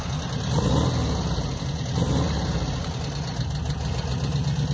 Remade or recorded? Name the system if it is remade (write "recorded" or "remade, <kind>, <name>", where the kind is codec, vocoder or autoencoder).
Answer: recorded